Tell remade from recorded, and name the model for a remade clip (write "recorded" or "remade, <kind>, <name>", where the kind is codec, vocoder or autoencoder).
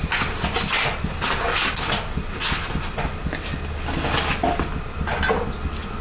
recorded